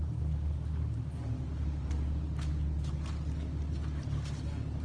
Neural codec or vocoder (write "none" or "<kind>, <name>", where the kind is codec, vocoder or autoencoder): none